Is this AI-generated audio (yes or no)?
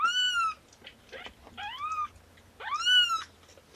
no